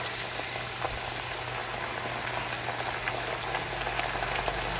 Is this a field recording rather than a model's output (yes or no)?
yes